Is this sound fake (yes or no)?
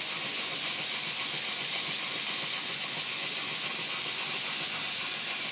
yes